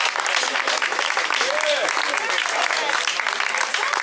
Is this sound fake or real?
real